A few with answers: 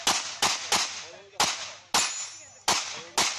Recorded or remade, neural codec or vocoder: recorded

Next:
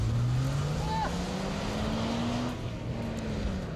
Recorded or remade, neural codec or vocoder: recorded